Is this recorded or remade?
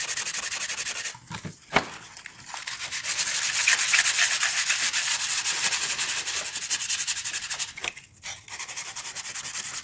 recorded